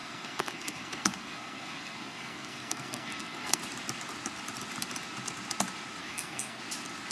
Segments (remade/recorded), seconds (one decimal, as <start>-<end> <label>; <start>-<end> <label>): 0.0-3.6 remade; 3.6-6.0 recorded; 6.0-6.6 remade; 6.6-7.1 recorded